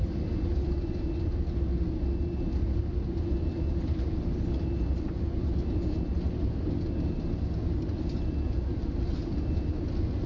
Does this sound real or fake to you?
real